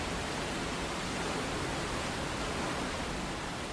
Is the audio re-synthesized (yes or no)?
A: no